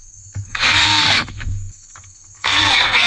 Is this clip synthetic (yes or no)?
yes